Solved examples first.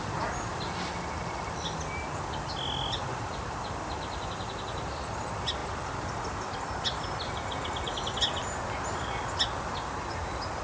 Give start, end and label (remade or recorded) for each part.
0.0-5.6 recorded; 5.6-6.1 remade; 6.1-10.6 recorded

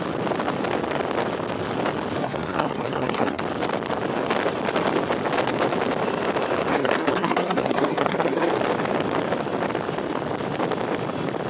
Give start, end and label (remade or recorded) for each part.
0.0-2.2 recorded; 2.2-3.4 remade; 3.4-6.7 recorded; 6.7-8.5 remade; 8.5-11.5 recorded